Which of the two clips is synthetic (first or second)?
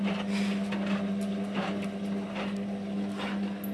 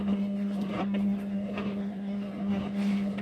second